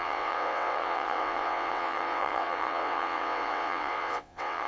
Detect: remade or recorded remade